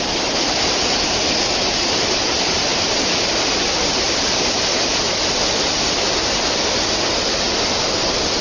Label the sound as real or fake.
real